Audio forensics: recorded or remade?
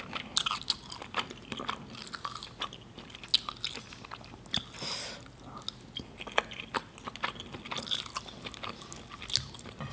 recorded